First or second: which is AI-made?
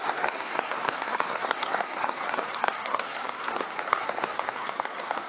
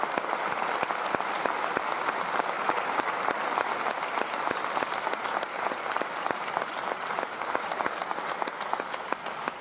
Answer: first